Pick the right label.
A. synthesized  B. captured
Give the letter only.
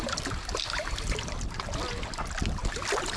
B